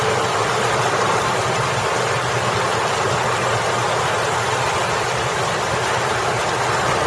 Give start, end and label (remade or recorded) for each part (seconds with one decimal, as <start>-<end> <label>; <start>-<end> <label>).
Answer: 0.0-7.1 recorded